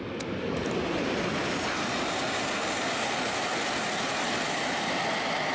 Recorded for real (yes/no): yes